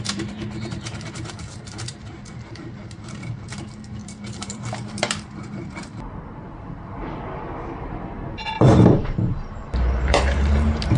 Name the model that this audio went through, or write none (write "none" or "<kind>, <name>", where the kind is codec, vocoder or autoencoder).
vocoder, BigVGAN v2